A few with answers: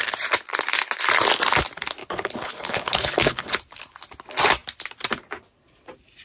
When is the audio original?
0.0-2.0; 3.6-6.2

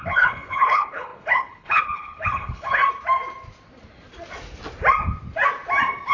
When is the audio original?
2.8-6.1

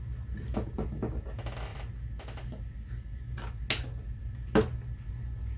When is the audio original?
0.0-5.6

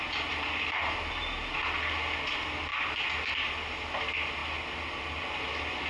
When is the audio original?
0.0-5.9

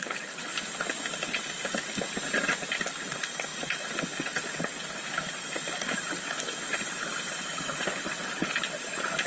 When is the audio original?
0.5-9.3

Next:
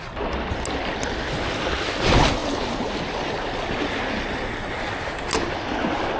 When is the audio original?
0.0-6.2

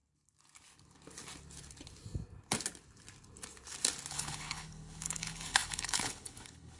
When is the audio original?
0.0-4.1